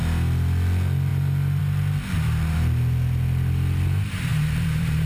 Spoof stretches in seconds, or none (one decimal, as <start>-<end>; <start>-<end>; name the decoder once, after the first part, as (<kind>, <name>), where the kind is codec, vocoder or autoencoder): 4.3-5.1 (vocoder, BigVGAN v2)